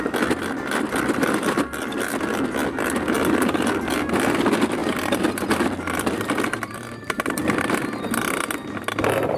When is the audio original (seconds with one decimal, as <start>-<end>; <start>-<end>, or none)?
0.0-4.8; 8.1-9.4